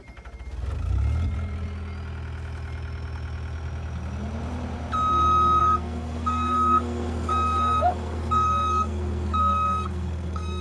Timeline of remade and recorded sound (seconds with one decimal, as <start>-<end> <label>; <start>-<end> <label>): 0.0-5.6 recorded; 5.6-10.6 remade